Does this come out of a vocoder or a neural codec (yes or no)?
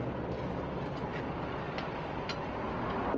no